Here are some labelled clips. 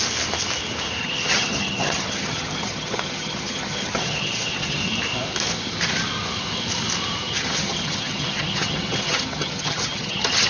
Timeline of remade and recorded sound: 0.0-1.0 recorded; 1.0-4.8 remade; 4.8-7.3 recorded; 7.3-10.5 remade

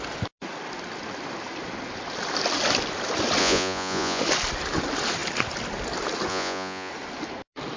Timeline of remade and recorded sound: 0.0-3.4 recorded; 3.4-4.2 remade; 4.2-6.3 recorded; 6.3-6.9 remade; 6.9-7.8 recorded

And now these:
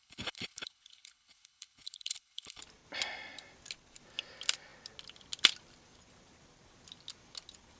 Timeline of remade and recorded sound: 0.0-2.6 remade; 2.6-7.8 recorded

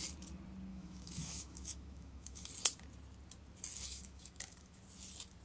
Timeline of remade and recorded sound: 0.0-0.7 recorded; 0.7-2.5 remade; 2.5-3.9 recorded; 3.9-4.8 remade; 4.8-5.4 recorded

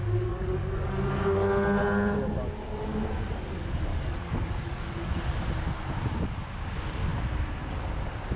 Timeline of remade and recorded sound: 0.0-1.1 remade; 1.1-3.9 recorded; 3.9-5.2 remade; 5.2-8.4 recorded

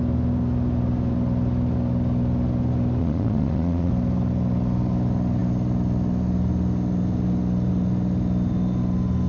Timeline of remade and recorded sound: 0.0-3.0 recorded; 3.0-3.9 remade; 3.9-9.3 recorded

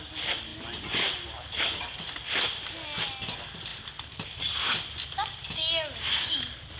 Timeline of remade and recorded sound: 0.0-6.8 recorded

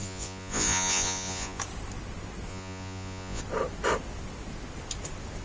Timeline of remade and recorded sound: 0.0-1.6 remade; 1.6-2.5 recorded; 2.5-3.4 remade; 3.4-5.4 recorded